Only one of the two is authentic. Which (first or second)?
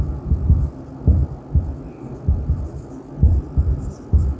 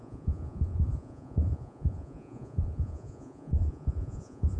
first